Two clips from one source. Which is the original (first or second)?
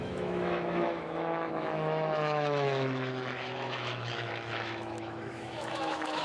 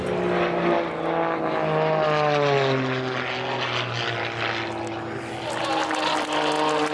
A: second